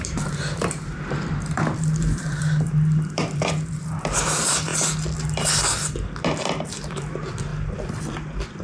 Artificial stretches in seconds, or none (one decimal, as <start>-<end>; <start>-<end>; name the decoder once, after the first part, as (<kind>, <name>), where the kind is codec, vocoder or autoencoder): 0.0-4.7 (vocoder, BigVGAN v2); 6.6-7.5